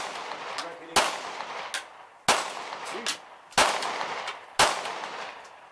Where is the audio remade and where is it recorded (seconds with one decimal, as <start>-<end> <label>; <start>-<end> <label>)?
0.0-5.7 recorded